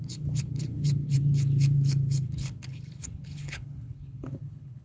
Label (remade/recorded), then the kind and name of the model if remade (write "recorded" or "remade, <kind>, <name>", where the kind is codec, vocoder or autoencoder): remade, codec, HILCodec